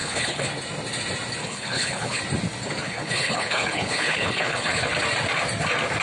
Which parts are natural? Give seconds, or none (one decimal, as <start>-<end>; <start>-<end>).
0.5-1.4; 2.2-2.8; 4.9-6.0